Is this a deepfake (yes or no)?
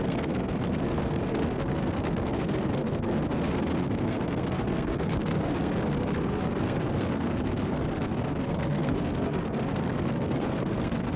yes